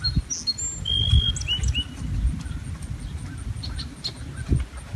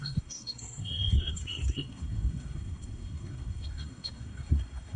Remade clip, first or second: second